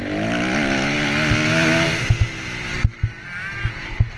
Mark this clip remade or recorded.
recorded